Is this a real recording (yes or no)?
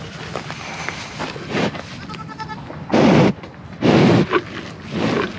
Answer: yes